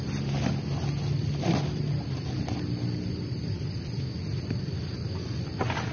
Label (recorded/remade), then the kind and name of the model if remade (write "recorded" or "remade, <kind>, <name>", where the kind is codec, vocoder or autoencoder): recorded